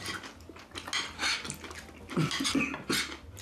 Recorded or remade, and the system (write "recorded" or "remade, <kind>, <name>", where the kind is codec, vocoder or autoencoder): recorded